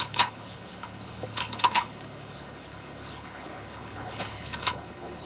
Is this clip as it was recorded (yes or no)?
no